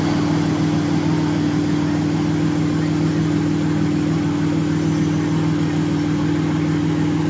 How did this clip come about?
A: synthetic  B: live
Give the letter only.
B